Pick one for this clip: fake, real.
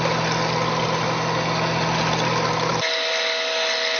real